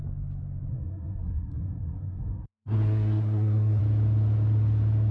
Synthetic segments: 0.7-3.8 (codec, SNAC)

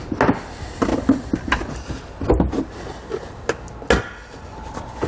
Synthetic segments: none

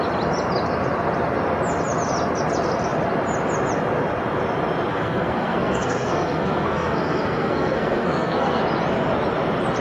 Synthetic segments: 4.9-8.6 (codec, SNAC)